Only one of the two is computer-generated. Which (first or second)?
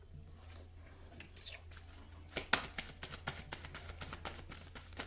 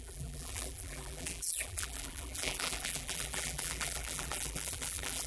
second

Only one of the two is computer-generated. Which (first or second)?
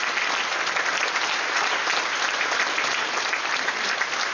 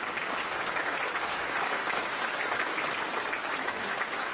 second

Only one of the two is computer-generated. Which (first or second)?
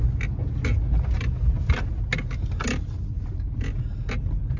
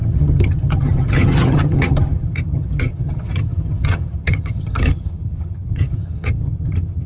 second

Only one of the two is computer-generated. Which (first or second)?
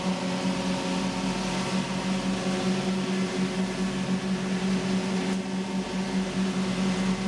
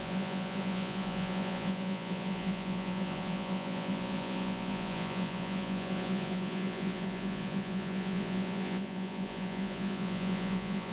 second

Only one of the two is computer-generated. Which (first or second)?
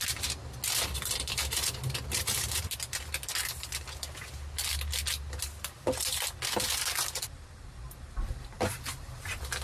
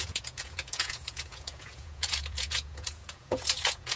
second